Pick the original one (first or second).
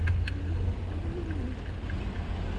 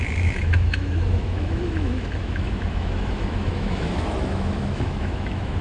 first